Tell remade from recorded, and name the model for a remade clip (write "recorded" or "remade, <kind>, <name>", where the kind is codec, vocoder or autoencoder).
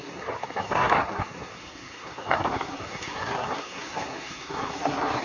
remade, codec, SNAC